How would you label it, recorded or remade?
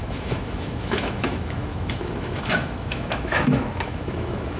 remade